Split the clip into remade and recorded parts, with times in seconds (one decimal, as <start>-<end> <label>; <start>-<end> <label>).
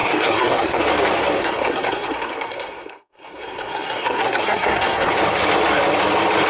0.0-0.8 remade; 0.8-1.4 recorded; 1.4-5.1 remade; 5.1-6.5 recorded